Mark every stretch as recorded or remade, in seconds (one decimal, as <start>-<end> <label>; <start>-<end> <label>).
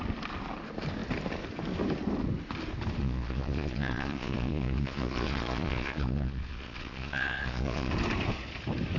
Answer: 0.0-3.0 recorded; 3.0-7.9 remade; 7.9-9.0 recorded